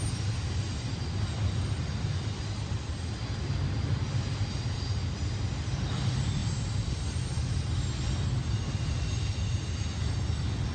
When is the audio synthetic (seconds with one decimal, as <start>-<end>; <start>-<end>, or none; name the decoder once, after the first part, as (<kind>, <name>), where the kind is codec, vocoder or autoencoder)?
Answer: none